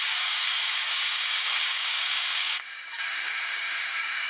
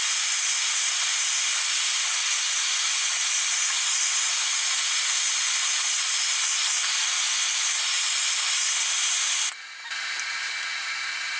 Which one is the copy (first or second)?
first